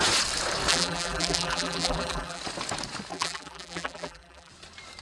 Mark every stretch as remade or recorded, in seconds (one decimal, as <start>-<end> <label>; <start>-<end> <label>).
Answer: 0.0-0.7 recorded; 0.7-2.4 remade; 2.4-3.1 recorded; 3.1-4.5 remade; 4.5-5.0 recorded